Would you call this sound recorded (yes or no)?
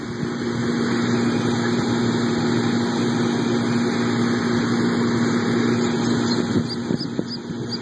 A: yes